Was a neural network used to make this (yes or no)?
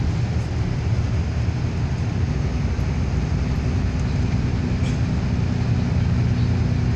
no